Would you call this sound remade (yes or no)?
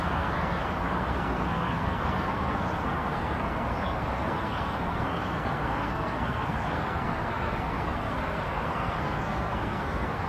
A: yes